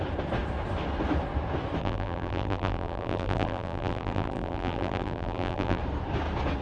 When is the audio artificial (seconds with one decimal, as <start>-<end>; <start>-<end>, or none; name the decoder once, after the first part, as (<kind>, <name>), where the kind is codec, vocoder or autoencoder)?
1.8-5.8 (vocoder, BigVGAN v2)